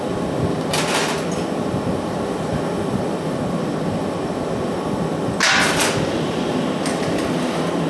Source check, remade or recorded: recorded